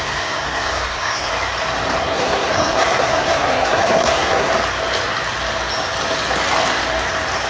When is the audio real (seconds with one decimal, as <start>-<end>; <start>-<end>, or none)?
1.3-2.0; 4.5-7.5